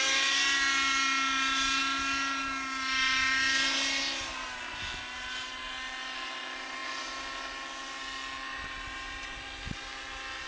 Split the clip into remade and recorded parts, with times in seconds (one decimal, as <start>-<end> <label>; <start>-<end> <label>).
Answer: 0.0-10.5 recorded